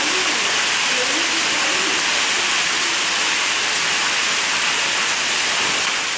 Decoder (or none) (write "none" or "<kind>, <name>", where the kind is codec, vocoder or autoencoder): none